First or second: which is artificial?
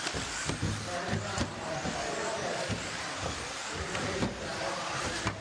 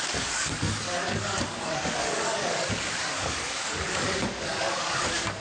second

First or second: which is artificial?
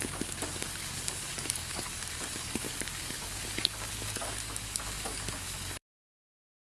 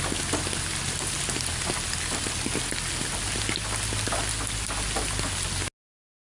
first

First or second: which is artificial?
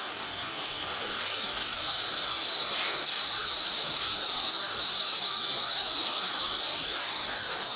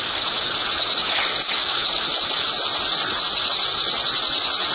first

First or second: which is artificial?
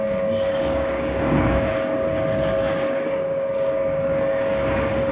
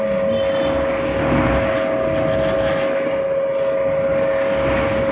first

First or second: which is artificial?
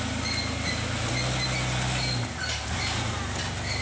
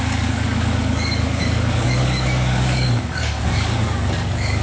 second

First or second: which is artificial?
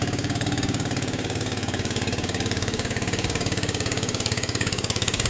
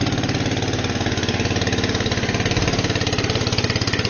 first